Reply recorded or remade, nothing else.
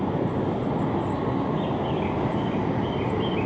recorded